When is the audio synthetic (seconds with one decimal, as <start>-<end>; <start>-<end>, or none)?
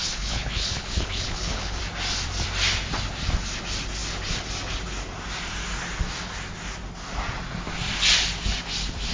0.0-1.8